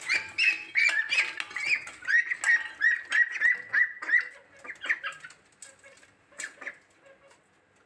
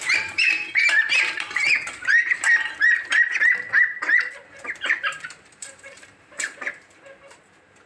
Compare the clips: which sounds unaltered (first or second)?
first